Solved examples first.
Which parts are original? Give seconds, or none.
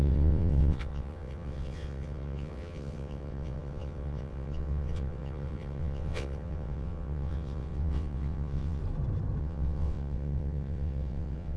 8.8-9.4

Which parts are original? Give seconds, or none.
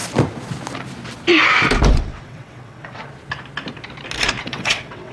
0.0-1.9; 3.0-4.4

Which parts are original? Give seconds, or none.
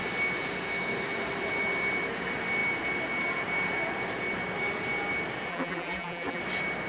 0.0-5.5; 6.4-6.9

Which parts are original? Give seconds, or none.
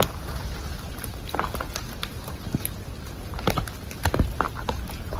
0.0-5.2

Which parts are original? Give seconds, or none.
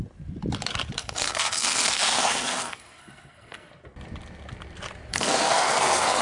0.0-1.0; 3.7-5.1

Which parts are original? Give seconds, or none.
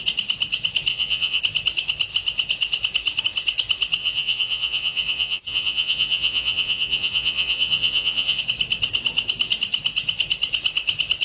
0.0-0.9; 1.4-4.0; 8.4-11.2